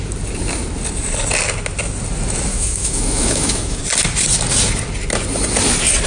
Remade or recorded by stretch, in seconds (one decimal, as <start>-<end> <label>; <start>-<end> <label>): 0.0-2.5 recorded; 2.5-3.8 remade; 3.8-6.1 recorded